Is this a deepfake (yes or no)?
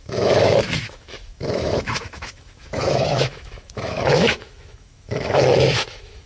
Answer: yes